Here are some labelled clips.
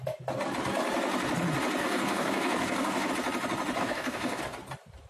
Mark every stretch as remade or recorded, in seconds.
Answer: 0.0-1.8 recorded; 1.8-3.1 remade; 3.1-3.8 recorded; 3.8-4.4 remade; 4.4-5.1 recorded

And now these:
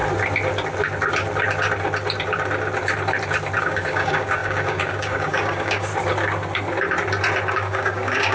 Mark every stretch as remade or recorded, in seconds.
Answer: 0.0-3.6 recorded; 3.6-5.9 remade; 5.9-7.5 recorded; 7.5-8.3 remade